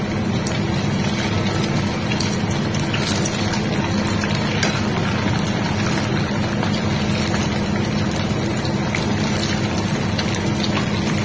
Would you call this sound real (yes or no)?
yes